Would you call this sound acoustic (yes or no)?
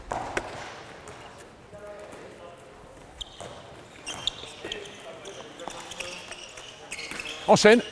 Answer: yes